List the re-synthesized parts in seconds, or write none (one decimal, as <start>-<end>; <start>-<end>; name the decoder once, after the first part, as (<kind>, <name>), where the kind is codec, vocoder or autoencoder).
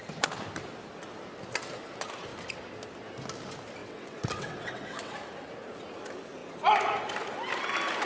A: 3.8-5.1 (vocoder, WaveNeXt)